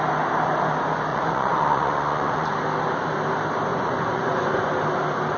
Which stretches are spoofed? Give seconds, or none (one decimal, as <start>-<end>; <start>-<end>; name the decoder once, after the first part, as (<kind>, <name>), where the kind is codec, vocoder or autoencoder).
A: 1.1-2.5 (vocoder, Vocos); 3.7-4.7